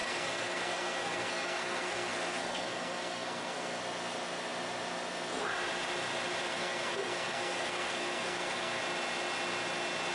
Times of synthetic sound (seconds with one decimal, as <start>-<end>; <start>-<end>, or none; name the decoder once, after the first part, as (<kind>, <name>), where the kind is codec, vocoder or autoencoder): 0.0-3.8 (codec, SNAC); 6.5-8.8